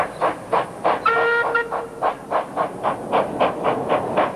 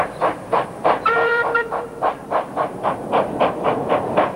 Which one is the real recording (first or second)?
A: first